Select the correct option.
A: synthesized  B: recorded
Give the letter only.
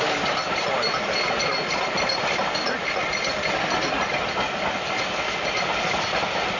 B